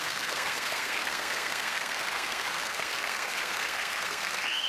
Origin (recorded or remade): remade